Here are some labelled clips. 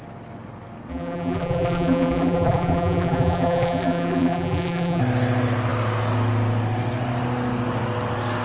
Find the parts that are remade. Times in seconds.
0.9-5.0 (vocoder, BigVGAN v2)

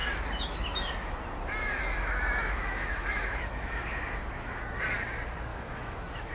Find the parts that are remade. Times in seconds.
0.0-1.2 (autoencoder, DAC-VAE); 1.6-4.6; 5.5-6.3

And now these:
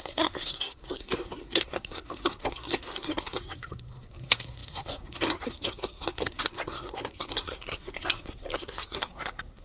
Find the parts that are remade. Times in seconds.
0.0-9.6 (codec, SNAC)